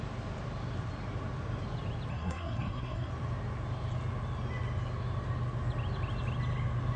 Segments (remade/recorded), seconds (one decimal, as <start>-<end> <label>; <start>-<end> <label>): 0.0-2.1 recorded; 2.1-3.1 remade; 3.1-7.0 recorded